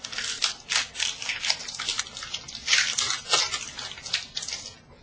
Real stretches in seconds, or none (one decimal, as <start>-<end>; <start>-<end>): 0.0-5.0